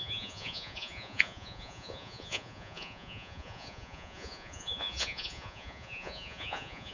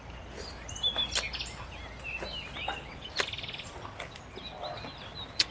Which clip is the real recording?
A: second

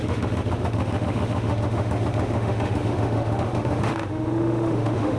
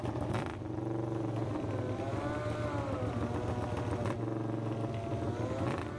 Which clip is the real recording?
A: second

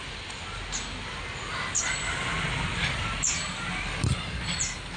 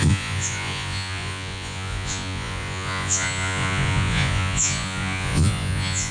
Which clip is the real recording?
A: first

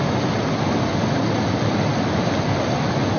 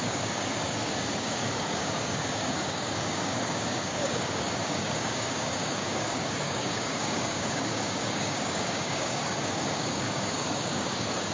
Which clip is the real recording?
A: first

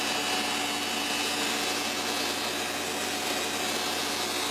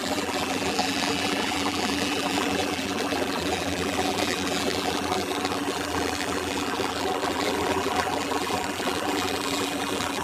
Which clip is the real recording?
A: first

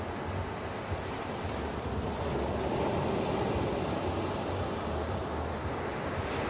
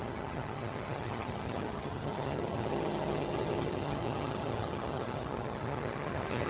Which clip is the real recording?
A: first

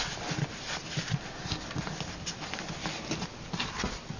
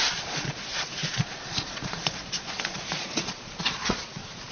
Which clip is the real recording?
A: first